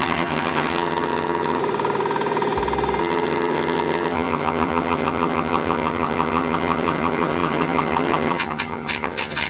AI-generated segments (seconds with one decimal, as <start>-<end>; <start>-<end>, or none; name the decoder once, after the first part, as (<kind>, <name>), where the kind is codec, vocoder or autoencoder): 0.0-1.6 (vocoder, HiFi-GAN); 3.0-9.5